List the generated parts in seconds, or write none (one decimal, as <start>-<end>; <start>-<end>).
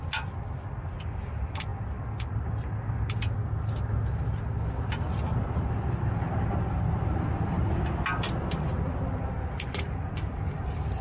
none